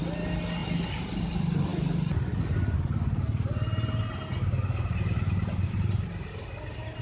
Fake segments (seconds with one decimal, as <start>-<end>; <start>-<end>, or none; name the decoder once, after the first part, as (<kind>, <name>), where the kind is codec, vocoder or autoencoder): none